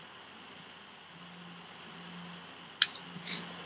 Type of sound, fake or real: real